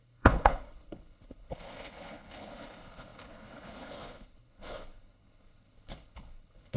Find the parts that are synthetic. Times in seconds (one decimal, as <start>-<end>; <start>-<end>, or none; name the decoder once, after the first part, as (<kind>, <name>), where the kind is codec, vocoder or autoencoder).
0.0-6.8 (codec, HILCodec)